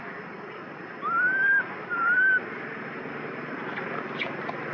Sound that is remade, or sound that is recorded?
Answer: recorded